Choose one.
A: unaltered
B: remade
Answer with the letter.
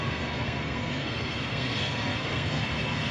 B